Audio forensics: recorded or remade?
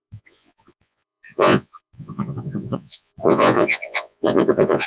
remade